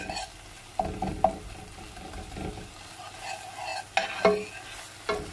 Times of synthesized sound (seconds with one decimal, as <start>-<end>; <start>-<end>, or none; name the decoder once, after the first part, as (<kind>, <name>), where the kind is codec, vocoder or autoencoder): none